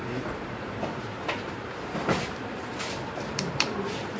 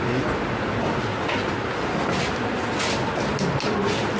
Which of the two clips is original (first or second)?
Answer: second